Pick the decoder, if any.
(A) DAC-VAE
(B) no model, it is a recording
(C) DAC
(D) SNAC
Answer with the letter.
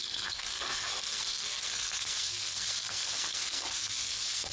D